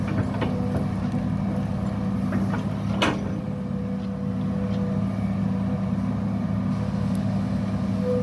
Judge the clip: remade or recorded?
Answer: recorded